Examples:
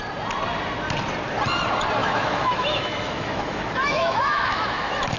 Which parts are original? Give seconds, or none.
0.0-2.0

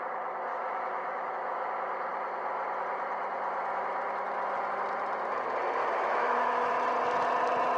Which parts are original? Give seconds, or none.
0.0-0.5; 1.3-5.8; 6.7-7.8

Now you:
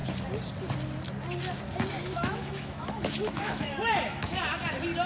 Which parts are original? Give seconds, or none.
0.0-2.0; 4.4-5.1

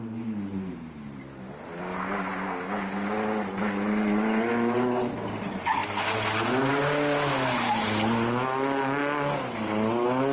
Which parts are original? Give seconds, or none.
0.0-10.3

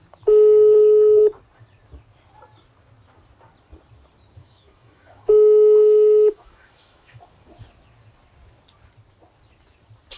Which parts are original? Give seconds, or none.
0.0-4.4; 7.2-10.2

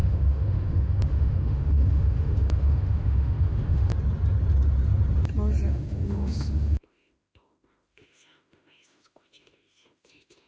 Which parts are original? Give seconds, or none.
3.9-5.7

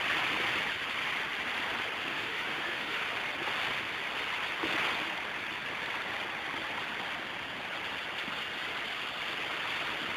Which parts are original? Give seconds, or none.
0.0-2.1; 3.0-10.2